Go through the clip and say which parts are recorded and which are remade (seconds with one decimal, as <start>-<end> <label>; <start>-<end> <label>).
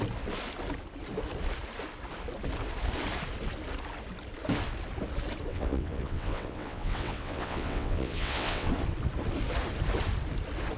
0.0-5.5 recorded; 5.5-8.7 remade; 8.7-10.8 recorded